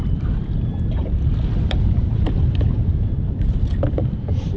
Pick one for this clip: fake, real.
fake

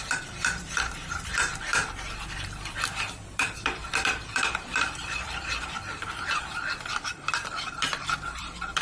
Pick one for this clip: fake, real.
fake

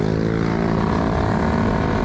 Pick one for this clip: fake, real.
real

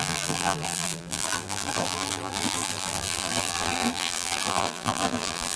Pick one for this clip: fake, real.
fake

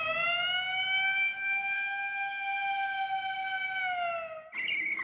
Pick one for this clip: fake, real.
real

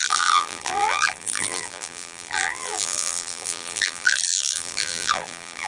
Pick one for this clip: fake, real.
fake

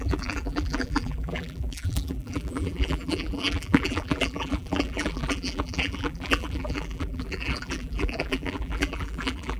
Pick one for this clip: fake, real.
fake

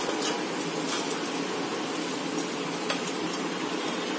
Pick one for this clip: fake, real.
real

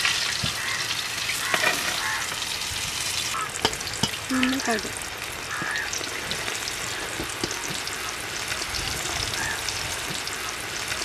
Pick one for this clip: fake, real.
real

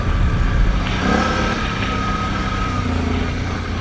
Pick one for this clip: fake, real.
fake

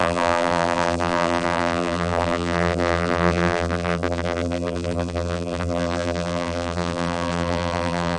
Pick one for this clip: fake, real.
fake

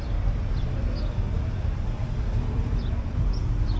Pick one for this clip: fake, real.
fake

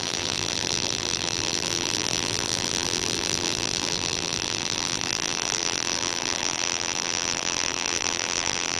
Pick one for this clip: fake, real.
fake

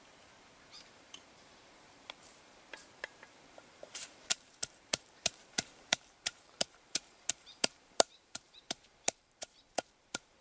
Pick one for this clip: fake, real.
fake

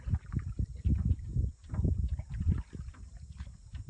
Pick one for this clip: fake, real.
fake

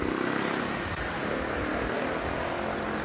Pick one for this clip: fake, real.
real